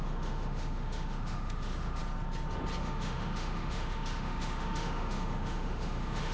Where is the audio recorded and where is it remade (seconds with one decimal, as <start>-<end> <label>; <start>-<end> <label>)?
0.0-2.0 remade; 2.0-2.8 recorded; 2.8-6.3 remade